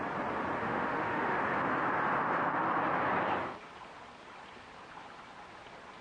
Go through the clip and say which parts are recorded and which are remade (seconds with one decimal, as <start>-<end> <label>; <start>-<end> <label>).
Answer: 0.0-0.6 recorded; 0.6-1.4 remade; 1.4-6.0 recorded